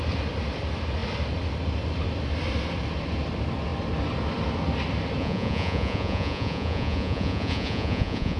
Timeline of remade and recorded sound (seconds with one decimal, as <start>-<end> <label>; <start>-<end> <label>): 0.0-5.2 recorded; 5.2-8.4 remade